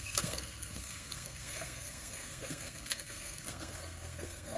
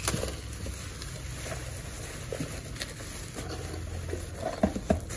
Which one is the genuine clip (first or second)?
second